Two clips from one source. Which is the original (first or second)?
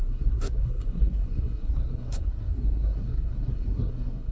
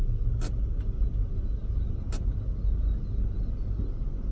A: second